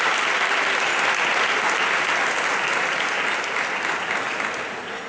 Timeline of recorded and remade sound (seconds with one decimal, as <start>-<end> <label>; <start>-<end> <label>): 0.0-5.1 recorded